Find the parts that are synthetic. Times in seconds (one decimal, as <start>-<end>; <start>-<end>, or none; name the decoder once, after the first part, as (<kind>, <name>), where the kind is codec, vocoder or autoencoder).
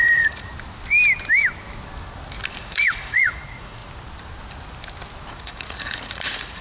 0.0-0.5 (vocoder, Vocos); 2.6-3.8; 5.3-6.6